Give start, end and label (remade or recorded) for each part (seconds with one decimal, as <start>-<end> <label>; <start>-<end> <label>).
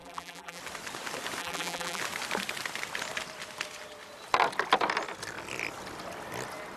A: 0.0-0.6 remade; 0.6-1.4 recorded; 1.4-2.0 remade; 2.0-6.8 recorded